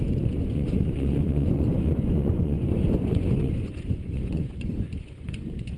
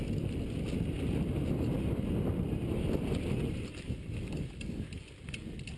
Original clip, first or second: second